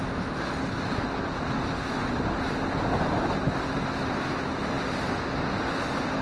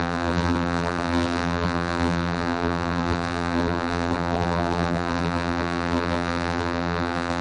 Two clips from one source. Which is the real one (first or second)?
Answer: first